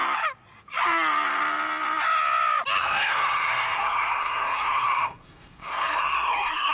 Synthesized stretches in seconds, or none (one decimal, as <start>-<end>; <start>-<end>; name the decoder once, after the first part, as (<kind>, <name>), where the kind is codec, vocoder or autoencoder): 2.8-6.7 (codec, SNAC)